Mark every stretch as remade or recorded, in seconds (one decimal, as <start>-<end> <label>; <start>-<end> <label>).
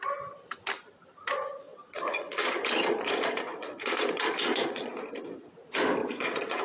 0.0-1.7 recorded; 1.7-5.0 remade; 5.0-6.0 recorded; 6.0-6.6 remade